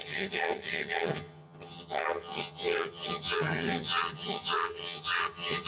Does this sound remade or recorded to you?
remade